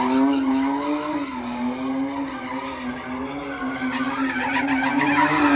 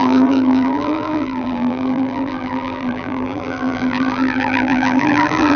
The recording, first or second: first